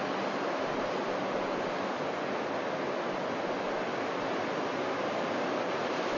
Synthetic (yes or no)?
no